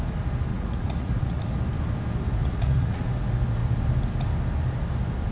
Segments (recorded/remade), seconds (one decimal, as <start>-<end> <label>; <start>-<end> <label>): 0.0-0.5 recorded; 0.5-1.4 remade; 1.4-2.4 recorded; 2.4-3.1 remade; 3.1-5.3 recorded